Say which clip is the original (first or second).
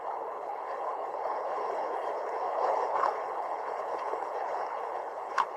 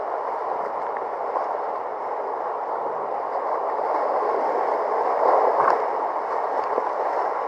second